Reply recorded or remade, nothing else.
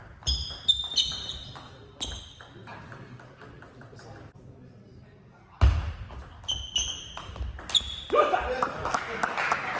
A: recorded